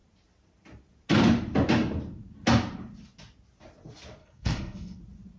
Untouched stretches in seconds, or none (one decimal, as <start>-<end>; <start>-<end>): 0.0-4.2; 5.0-5.4